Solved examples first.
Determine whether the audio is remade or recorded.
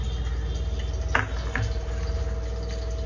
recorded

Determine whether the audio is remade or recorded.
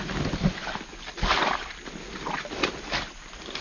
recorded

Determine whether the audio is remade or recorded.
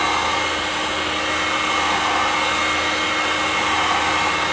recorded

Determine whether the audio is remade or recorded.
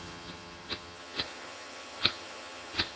remade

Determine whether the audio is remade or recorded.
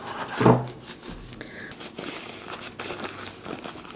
recorded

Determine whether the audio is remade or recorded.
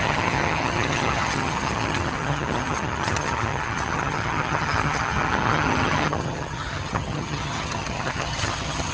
remade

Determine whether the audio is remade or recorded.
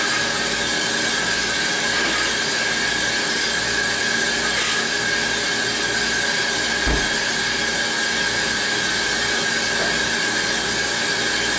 recorded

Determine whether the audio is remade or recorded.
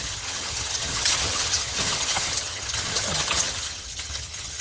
remade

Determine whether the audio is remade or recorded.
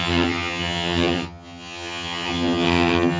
remade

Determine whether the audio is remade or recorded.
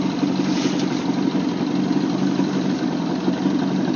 recorded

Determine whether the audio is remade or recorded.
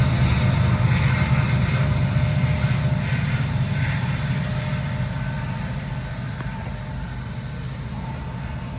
recorded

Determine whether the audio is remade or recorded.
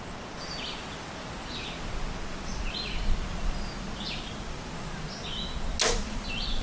recorded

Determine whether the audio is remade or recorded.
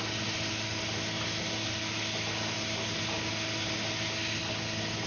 recorded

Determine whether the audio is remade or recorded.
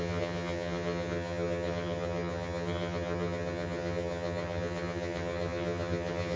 remade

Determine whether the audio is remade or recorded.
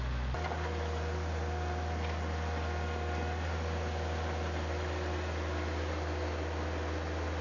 recorded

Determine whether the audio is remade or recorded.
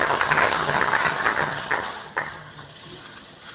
remade